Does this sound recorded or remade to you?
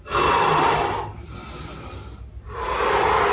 remade